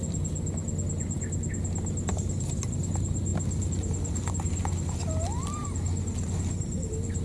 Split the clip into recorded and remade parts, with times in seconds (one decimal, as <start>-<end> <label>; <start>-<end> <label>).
0.0-3.3 recorded; 3.3-4.3 remade; 4.3-5.6 recorded; 5.6-7.2 remade